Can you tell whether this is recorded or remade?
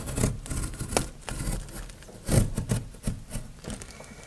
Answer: recorded